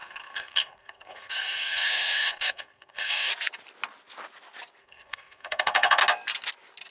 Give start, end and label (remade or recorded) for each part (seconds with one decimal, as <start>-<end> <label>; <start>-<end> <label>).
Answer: 0.0-3.3 remade; 3.3-4.8 recorded; 4.8-6.0 remade; 6.0-6.9 recorded